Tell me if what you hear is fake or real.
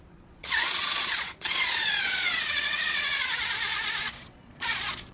fake